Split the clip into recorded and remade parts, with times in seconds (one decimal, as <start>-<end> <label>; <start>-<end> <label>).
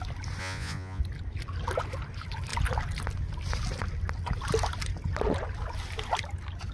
0.0-0.4 recorded; 0.4-1.0 remade; 1.0-6.7 recorded